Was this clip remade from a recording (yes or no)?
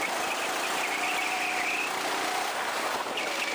yes